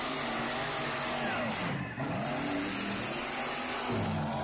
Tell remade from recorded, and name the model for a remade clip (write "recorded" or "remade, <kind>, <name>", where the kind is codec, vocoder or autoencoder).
recorded